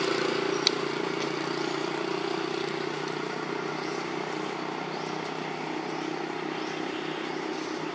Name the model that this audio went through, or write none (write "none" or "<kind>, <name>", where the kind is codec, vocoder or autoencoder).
none